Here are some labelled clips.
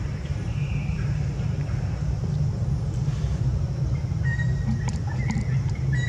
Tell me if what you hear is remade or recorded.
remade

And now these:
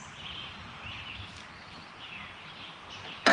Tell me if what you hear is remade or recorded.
recorded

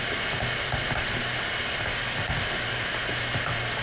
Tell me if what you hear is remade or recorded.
recorded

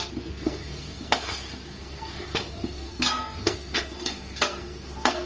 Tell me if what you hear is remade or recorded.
remade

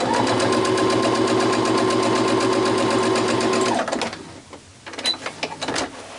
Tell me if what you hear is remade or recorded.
recorded